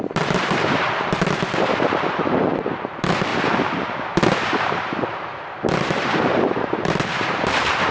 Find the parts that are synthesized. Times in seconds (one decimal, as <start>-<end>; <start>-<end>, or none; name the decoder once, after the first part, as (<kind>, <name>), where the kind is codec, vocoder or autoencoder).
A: 0.0-3.3 (vocoder, BigVGAN v2); 4.4-7.9